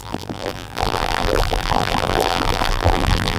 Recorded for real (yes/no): no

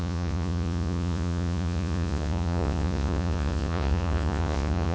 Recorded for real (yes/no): no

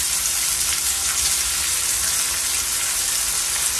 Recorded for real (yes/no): yes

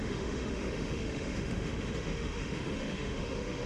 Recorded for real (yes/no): no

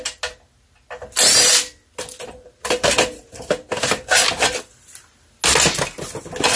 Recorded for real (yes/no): yes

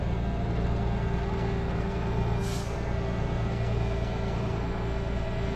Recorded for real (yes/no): no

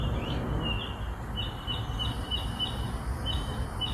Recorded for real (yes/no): yes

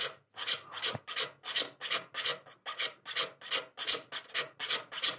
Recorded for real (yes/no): yes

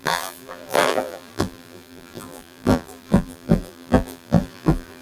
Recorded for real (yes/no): no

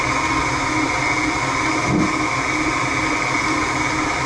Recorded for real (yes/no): yes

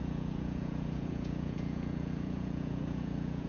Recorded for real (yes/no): no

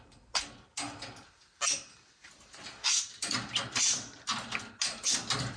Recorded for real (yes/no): yes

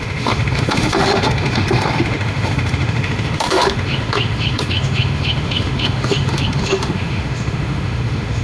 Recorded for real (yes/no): no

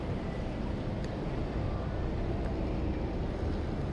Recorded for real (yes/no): yes